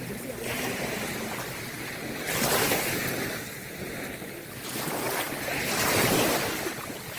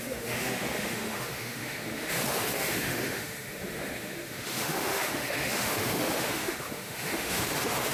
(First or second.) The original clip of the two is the first